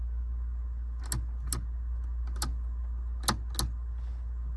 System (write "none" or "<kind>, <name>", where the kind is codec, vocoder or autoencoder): none